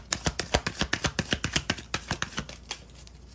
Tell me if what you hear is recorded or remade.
recorded